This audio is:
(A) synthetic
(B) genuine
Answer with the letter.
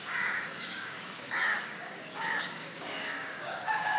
A